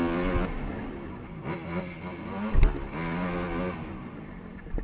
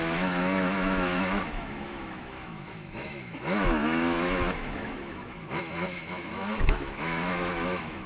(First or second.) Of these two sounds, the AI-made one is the second